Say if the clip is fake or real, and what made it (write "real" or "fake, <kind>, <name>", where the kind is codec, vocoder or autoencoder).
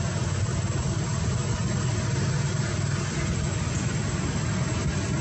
real